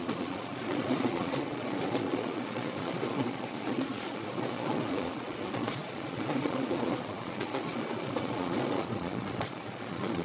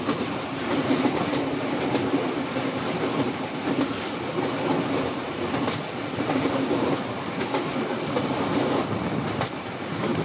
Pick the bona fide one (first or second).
second